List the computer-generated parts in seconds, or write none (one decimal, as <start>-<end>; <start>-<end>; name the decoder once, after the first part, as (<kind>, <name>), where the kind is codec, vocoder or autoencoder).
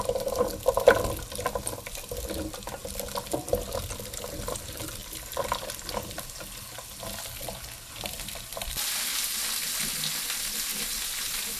2.8-3.8 (vocoder, BigVGAN v2); 5.0-5.9; 8.5-9.2